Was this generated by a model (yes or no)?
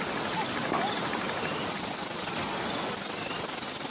no